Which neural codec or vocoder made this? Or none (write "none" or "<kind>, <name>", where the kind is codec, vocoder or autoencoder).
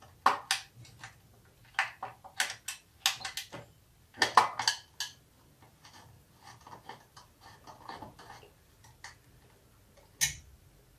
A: none